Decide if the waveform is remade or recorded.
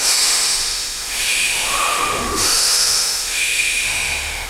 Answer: remade